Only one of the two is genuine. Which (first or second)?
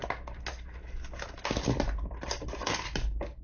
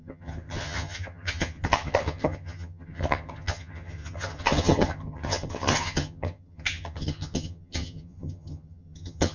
first